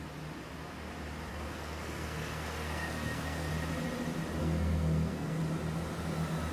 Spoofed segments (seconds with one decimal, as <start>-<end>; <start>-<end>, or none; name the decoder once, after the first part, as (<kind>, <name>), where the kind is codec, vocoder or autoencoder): 1.3-3.5 (codec, SNAC); 4.4-5.4